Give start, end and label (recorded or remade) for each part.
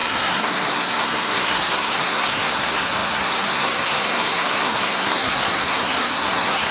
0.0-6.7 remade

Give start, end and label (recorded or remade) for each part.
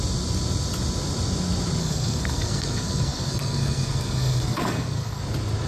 0.0-1.8 recorded; 1.8-5.2 remade; 5.2-5.7 recorded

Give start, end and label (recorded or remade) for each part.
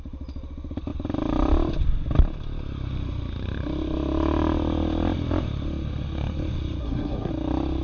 0.0-6.8 recorded; 6.8-7.3 remade; 7.3-7.8 recorded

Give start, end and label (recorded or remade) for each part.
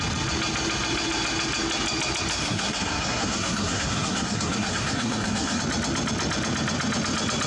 0.0-2.3 recorded; 2.3-5.6 remade; 5.6-7.5 recorded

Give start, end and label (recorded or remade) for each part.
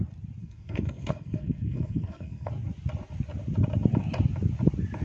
0.0-0.4 recorded; 0.4-2.5 remade; 2.5-5.0 recorded